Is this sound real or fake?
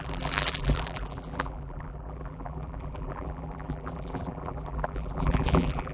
fake